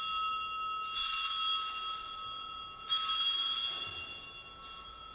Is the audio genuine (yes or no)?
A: yes